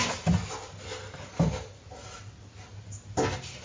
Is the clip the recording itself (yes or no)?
yes